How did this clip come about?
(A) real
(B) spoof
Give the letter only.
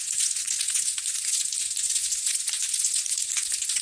B